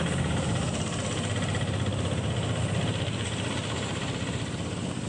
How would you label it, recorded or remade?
recorded